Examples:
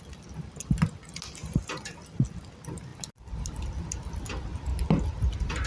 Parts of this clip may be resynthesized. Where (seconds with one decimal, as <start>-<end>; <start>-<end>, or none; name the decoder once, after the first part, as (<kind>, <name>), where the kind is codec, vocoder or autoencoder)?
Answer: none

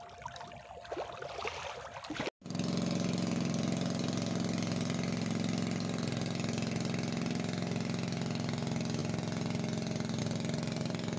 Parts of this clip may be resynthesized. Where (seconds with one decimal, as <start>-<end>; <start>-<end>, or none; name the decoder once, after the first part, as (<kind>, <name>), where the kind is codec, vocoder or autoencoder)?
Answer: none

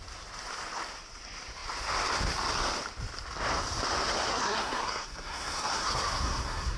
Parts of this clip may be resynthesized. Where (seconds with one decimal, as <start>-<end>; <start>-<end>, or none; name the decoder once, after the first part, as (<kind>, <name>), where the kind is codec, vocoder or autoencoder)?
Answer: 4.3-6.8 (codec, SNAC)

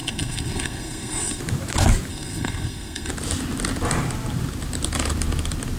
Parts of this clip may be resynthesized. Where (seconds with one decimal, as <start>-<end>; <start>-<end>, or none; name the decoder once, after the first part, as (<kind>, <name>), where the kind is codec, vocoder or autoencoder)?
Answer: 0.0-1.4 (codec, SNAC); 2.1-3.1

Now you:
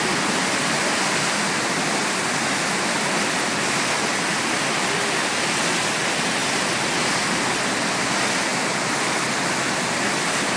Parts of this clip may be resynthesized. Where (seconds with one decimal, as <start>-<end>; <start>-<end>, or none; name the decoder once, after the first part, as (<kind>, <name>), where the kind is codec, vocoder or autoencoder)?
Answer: 8.5-9.1 (vocoder, BigVGAN v2)

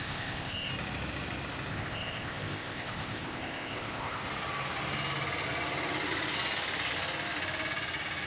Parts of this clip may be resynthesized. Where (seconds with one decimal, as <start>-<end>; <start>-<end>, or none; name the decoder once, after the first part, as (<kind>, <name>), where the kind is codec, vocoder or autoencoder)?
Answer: 0.0-0.7 (codec, ZipCodec); 1.7-4.2